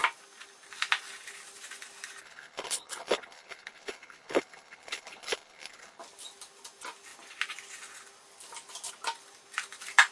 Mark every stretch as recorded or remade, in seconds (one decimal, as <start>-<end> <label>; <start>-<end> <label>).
0.0-2.2 recorded; 2.2-6.0 remade; 6.0-10.1 recorded